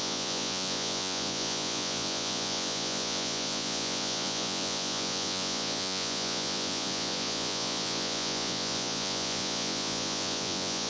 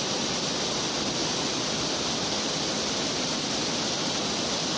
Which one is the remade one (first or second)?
first